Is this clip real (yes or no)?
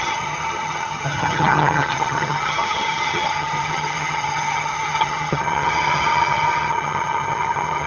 no